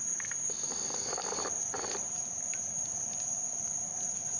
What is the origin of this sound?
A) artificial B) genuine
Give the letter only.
B